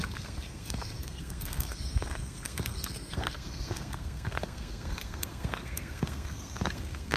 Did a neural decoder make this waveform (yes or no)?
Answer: yes